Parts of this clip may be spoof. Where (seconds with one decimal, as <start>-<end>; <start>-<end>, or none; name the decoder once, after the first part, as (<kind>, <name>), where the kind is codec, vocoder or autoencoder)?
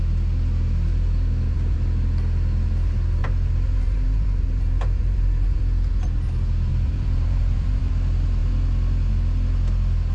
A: 3.2-5.6 (vocoder, BigVGAN v2); 6.7-7.8